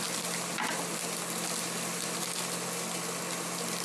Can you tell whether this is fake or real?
real